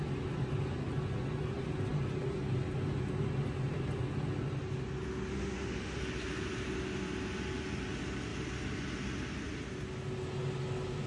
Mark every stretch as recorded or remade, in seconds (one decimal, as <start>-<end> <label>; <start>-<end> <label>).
0.0-5.3 recorded; 5.3-6.0 remade; 6.0-11.1 recorded